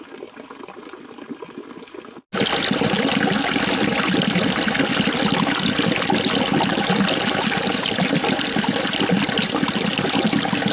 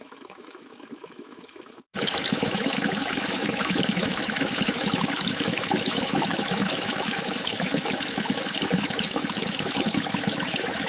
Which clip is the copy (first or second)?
second